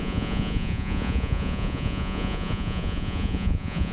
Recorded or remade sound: remade